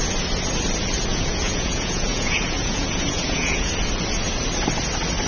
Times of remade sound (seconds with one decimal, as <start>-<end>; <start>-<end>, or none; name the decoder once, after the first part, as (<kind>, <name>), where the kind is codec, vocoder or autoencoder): 1.1-3.7 (vocoder, Vocos)

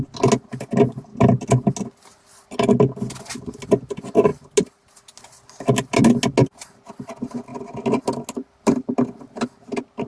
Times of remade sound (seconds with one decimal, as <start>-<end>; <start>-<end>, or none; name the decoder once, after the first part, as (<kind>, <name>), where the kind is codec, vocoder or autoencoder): none